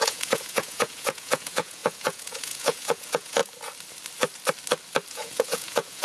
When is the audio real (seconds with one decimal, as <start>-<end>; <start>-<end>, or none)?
3.4-5.1